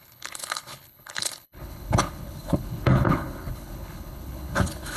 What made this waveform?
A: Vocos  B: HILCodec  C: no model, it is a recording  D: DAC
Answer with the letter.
B